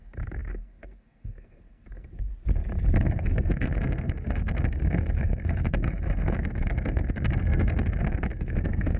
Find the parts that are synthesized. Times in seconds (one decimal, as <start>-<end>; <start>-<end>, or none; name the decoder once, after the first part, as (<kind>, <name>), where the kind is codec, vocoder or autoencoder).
0.0-2.3 (codec, SNAC); 3.0-9.0